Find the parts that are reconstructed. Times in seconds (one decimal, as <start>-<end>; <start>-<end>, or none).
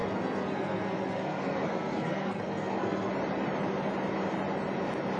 0.0-3.1